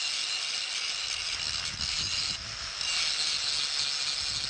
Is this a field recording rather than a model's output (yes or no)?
yes